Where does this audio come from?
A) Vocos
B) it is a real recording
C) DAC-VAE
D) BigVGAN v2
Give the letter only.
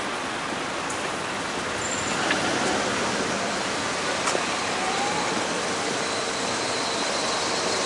B